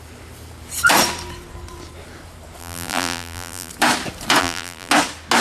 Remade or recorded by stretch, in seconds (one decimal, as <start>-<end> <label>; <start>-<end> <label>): 0.0-2.6 recorded; 2.6-3.7 remade; 3.7-4.4 recorded; 4.4-4.9 remade; 4.9-5.4 recorded